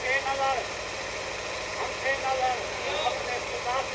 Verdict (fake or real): real